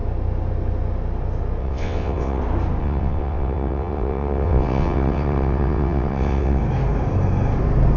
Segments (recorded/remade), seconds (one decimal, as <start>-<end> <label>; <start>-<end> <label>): 0.0-1.6 recorded; 1.6-2.4 remade; 2.4-2.8 recorded; 2.8-6.6 remade; 6.6-8.0 recorded

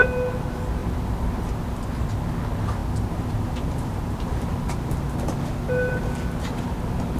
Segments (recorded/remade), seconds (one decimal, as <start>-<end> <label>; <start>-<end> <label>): 0.0-0.8 recorded; 0.8-1.5 remade; 1.5-2.8 recorded; 2.8-4.7 remade; 4.7-7.2 recorded

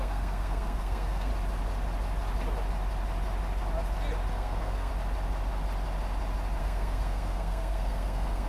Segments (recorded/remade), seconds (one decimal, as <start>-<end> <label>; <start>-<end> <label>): 0.0-1.3 remade; 1.3-4.3 recorded; 4.3-4.9 remade; 4.9-6.6 recorded; 6.6-8.5 remade

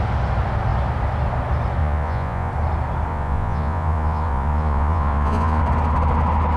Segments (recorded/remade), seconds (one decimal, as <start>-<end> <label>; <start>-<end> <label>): 0.0-1.8 recorded; 1.8-2.5 remade; 2.5-3.1 recorded; 3.1-5.6 remade; 5.6-6.6 recorded

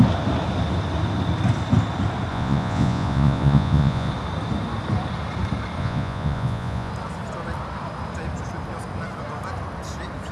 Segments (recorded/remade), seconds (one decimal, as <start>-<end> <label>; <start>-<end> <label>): 0.0-2.3 recorded; 2.3-4.1 remade; 4.1-5.8 recorded; 5.8-6.9 remade; 6.9-10.3 recorded

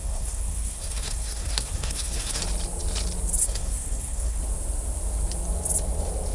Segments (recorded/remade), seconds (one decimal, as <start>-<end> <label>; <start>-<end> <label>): 0.0-2.4 remade; 2.4-3.4 recorded; 3.4-4.4 remade; 4.4-6.3 recorded